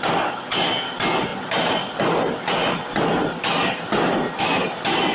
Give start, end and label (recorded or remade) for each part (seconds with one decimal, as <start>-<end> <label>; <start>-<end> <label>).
0.0-5.1 recorded